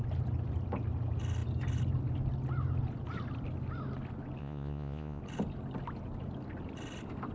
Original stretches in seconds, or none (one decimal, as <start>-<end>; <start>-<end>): 0.0-4.4; 5.2-7.3